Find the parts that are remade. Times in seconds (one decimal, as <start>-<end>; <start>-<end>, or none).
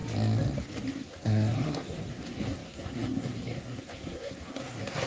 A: 0.9-5.1